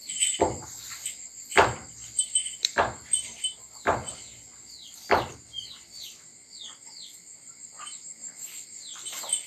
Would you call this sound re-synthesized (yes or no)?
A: no